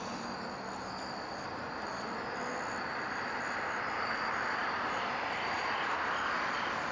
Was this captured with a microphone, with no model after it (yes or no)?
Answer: yes